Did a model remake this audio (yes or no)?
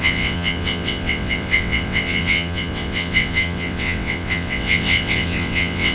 yes